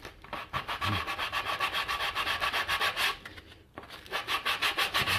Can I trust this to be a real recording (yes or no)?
yes